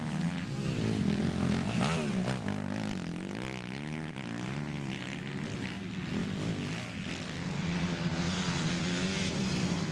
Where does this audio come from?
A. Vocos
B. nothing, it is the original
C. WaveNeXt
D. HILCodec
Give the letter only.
B